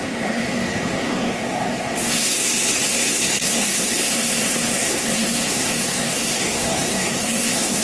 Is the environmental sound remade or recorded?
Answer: remade